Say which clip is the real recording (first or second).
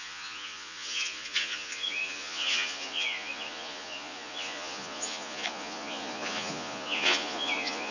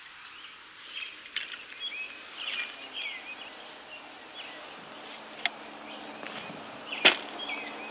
second